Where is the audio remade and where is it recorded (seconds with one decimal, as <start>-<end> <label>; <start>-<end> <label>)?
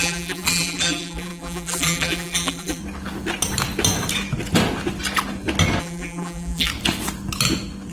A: 0.0-2.8 remade; 2.8-5.8 recorded; 5.8-6.7 remade; 6.7-7.9 recorded